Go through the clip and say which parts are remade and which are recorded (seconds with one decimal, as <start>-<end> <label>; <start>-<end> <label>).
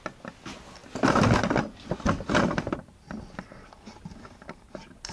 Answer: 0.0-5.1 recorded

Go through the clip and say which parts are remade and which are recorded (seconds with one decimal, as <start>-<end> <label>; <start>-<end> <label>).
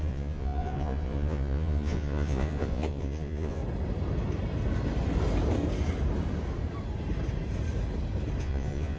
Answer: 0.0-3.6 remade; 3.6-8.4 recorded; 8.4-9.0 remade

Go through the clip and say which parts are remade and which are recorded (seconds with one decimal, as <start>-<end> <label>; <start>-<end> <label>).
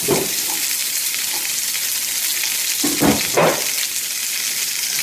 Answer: 0.0-5.0 recorded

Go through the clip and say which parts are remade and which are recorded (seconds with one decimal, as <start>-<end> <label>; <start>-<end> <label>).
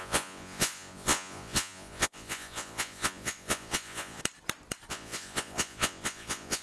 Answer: 0.0-4.2 remade; 4.2-4.9 recorded; 4.9-6.6 remade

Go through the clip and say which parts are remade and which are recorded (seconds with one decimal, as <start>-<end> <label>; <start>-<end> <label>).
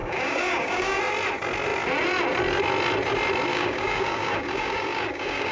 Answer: 0.0-1.0 remade; 1.0-3.5 recorded; 3.5-5.5 remade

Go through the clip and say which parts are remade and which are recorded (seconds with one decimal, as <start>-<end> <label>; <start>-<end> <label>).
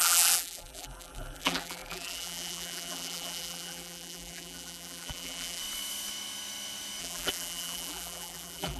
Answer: 0.0-5.6 remade; 5.6-7.0 recorded; 7.0-8.8 remade